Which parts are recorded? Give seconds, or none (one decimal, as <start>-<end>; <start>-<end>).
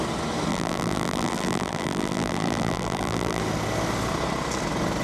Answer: 0.0-0.5; 3.4-5.0